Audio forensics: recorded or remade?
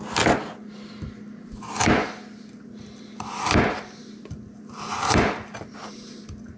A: recorded